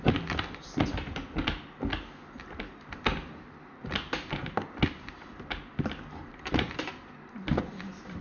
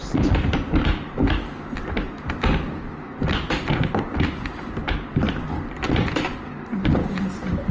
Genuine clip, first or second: first